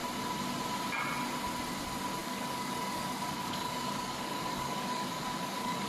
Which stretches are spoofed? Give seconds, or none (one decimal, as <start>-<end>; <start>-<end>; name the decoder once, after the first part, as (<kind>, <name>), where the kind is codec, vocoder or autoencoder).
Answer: 2.2-5.9 (codec, DAC)